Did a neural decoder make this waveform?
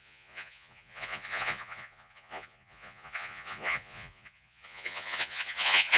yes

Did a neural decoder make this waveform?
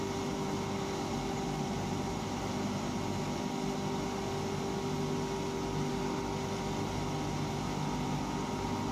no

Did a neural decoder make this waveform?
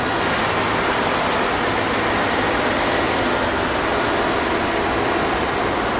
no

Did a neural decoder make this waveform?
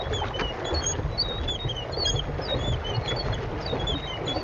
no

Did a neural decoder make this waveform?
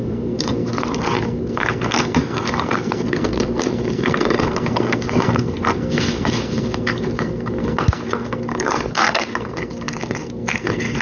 yes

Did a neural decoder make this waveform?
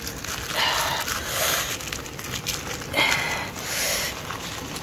no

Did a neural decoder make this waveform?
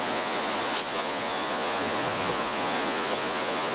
yes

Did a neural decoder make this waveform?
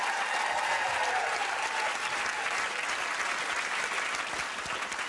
no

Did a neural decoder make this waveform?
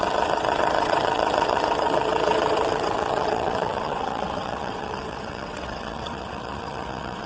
yes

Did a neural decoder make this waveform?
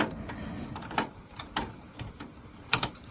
yes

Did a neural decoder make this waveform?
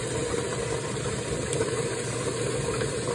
no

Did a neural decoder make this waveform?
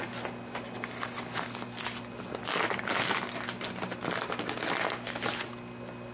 no